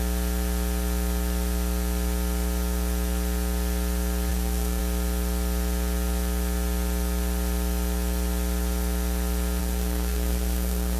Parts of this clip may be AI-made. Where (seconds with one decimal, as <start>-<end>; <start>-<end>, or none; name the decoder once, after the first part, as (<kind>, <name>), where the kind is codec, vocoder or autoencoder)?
4.3-4.8 (codec, SNAC); 9.6-11.0